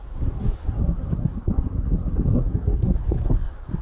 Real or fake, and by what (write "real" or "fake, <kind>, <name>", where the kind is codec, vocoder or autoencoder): fake, codec, SNAC